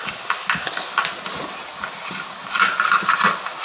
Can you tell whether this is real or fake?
real